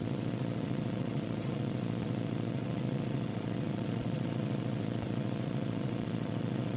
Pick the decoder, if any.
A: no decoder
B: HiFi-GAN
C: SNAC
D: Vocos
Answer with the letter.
D